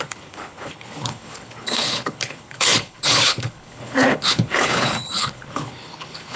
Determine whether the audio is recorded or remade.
remade